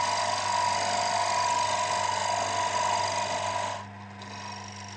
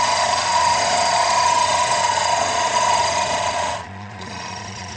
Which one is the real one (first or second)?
first